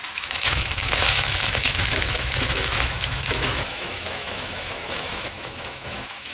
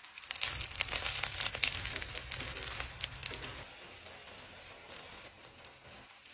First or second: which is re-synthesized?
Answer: first